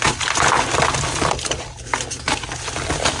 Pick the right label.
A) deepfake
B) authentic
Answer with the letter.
B